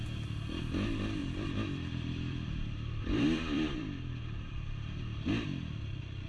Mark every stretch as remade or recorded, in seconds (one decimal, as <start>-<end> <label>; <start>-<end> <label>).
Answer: 0.0-1.2 recorded; 1.2-5.0 remade; 5.0-6.3 recorded